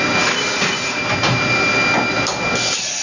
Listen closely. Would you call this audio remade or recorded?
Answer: recorded